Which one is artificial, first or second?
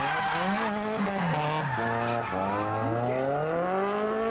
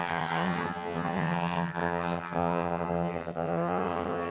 second